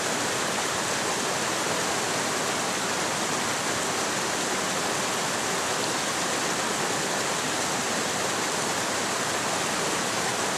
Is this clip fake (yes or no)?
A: no